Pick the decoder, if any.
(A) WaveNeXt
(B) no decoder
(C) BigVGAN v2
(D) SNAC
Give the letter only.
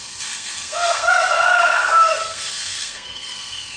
D